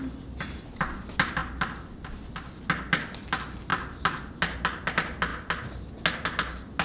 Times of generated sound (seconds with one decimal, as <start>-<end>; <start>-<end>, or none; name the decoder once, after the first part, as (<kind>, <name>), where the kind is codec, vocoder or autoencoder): none